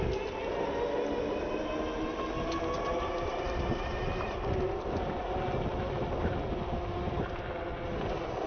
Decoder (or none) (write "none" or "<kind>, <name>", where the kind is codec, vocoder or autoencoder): none